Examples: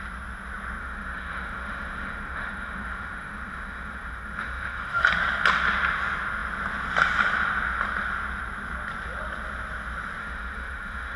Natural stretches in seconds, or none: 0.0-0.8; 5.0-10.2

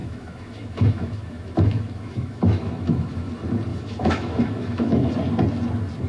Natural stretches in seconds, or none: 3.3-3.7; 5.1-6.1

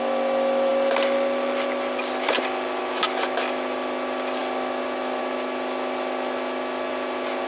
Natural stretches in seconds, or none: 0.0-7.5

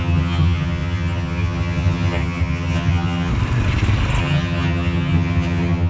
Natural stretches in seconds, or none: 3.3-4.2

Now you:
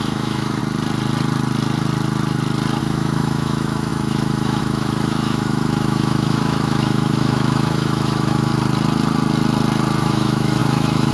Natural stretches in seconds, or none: 0.6-2.8; 8.5-10.0

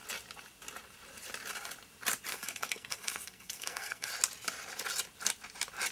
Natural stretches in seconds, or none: 0.0-2.3; 4.1-5.9